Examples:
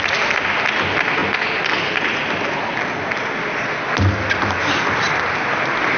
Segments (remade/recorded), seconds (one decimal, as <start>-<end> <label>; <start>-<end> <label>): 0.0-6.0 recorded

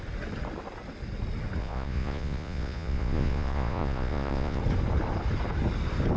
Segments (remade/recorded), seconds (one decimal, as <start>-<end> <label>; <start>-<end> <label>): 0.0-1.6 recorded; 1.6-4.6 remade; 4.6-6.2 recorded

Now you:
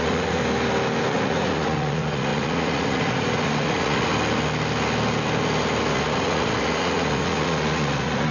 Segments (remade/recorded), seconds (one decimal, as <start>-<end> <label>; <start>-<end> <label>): 0.0-0.4 remade; 0.4-1.1 recorded; 1.1-4.1 remade; 4.1-5.9 recorded; 5.9-8.3 remade

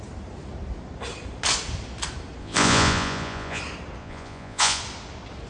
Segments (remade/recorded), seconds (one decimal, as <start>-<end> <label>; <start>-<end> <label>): 0.0-2.4 recorded; 2.4-3.6 remade; 3.6-4.0 recorded; 4.0-4.8 remade; 4.8-5.5 recorded